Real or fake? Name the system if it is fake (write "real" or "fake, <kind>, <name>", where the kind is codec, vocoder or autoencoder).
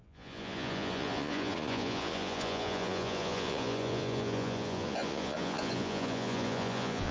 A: fake, vocoder, Vocos